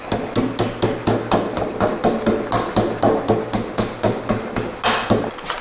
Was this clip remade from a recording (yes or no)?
no